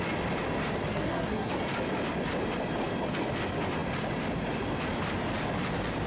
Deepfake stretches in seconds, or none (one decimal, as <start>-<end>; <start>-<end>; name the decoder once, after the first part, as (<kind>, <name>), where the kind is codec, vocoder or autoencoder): 0.9-1.5 (codec, SNAC)